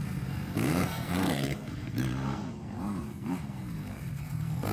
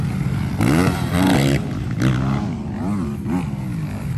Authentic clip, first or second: second